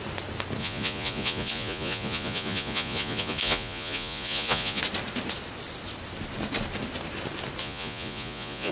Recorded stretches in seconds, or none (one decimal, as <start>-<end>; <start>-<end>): 0.0-0.6; 4.8-7.6